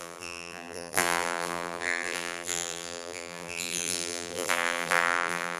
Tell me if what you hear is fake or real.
fake